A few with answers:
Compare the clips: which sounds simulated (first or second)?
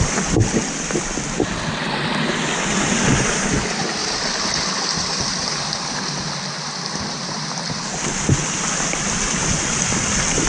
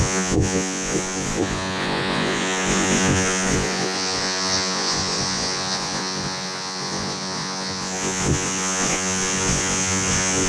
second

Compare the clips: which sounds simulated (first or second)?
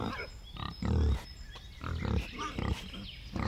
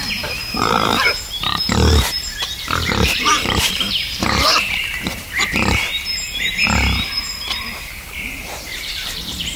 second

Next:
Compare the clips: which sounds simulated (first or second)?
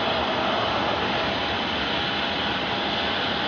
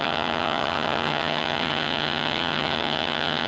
second